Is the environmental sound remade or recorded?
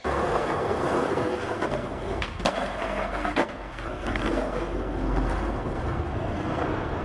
remade